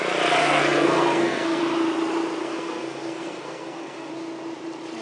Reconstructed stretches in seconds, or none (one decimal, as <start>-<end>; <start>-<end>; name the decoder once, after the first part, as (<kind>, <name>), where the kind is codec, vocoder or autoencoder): 0.4-1.6 (codec, SNAC); 2.4-4.1